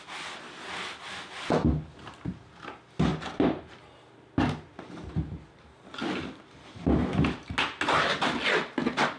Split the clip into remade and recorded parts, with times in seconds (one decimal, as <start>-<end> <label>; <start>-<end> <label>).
0.0-9.2 recorded